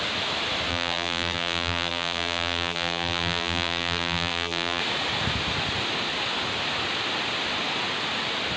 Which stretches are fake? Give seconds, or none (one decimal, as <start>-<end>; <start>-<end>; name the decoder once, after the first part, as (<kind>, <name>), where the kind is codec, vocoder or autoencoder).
0.7-4.8 (vocoder, BigVGAN v2)